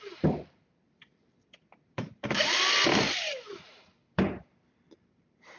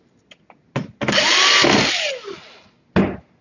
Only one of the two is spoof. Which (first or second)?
first